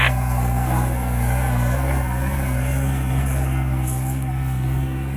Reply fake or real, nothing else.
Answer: fake